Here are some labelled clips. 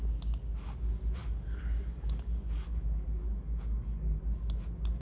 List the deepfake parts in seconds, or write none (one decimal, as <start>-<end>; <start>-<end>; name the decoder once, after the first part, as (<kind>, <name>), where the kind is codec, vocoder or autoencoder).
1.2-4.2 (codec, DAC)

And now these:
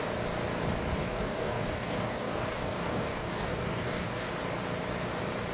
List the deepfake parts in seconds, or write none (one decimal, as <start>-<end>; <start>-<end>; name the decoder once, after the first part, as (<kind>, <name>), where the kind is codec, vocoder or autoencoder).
1.0-4.3 (codec, DAC)

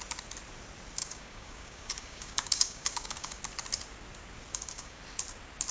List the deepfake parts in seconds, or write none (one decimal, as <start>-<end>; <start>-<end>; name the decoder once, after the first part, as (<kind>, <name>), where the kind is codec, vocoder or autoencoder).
1.0-3.4 (codec, DAC); 4.5-5.0

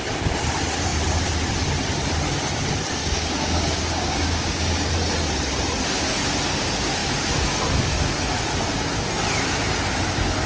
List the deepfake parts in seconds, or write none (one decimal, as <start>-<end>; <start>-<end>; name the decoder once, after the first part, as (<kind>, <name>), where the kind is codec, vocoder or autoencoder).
3.0-4.9 (codec, DAC)